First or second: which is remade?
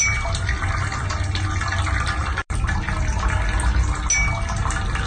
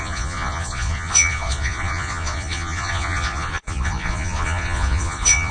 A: second